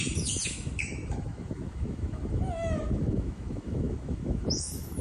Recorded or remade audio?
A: remade